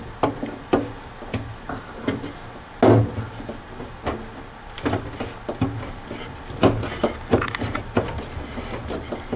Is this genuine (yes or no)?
yes